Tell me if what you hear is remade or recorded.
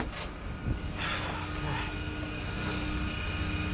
recorded